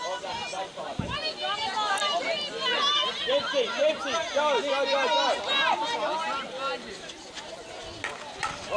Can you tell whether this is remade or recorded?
recorded